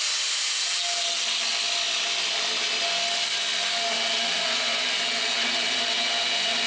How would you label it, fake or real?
real